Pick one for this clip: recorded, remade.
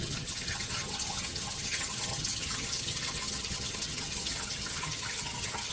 remade